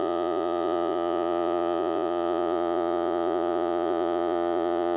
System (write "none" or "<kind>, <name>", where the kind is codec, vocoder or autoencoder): vocoder, Vocos